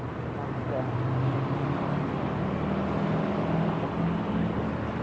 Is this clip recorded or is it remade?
recorded